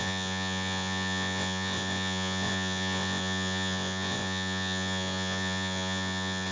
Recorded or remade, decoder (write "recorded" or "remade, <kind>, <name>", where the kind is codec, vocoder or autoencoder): remade, vocoder, Vocos